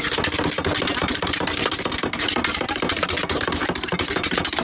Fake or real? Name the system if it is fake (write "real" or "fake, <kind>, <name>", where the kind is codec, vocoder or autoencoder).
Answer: real